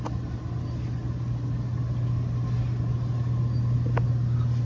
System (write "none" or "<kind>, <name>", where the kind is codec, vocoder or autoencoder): none